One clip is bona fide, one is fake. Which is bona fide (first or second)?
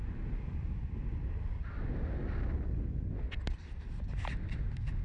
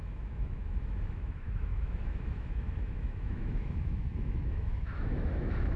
first